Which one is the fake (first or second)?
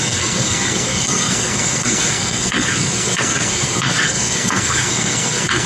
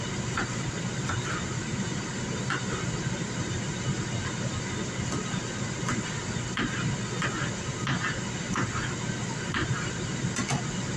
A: first